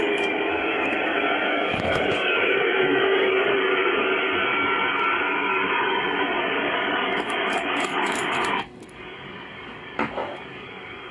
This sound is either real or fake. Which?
fake